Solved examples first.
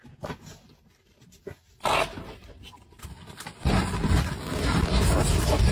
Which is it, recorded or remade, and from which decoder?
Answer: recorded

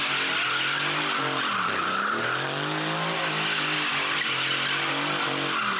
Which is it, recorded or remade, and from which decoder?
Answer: recorded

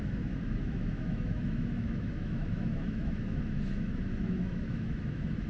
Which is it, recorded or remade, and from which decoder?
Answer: remade, autoencoder, DAC-VAE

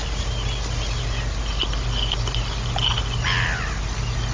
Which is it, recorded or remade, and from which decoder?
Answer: recorded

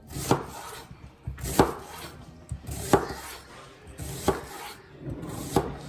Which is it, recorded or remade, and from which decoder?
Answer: recorded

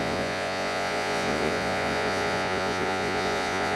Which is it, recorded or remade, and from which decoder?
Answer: remade, vocoder, Vocos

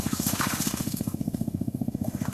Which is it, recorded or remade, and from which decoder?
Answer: remade, autoencoder, DAC-VAE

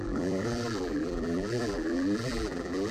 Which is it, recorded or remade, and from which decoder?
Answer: remade, vocoder, BigVGAN v2